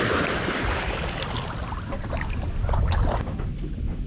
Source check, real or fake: real